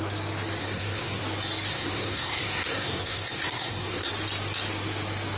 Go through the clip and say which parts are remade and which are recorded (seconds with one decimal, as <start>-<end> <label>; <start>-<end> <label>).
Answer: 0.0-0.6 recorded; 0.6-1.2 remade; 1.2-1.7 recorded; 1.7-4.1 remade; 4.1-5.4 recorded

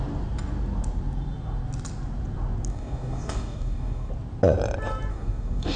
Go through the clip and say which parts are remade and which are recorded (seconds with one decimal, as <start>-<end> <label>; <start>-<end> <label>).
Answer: 0.0-2.7 recorded; 2.7-4.1 remade; 4.1-5.1 recorded; 5.1-5.8 remade

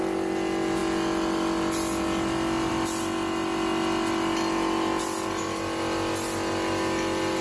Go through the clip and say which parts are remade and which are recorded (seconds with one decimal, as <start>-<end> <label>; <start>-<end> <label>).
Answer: 0.0-7.4 recorded

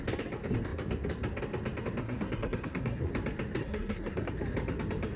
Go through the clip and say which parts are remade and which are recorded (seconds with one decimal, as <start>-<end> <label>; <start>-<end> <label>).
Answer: 0.0-2.0 recorded; 2.0-3.1 remade; 3.1-3.6 recorded; 3.6-4.3 remade; 4.3-5.2 recorded